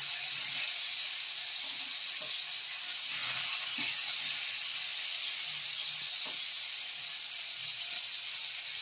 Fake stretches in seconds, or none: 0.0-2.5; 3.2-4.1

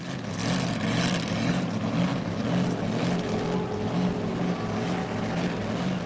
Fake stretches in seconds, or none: none

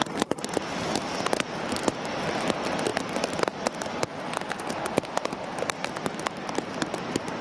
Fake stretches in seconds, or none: none